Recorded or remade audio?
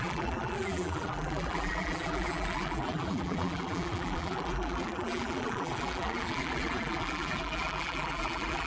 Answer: remade